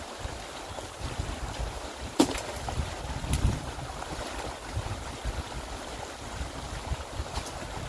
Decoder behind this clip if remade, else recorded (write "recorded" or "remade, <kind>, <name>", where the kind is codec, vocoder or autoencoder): recorded